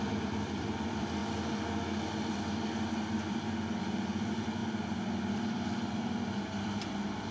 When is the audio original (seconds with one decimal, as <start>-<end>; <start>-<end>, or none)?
1.2-2.3; 4.6-5.3